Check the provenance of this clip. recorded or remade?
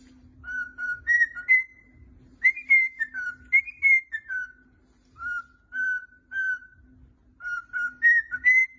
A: recorded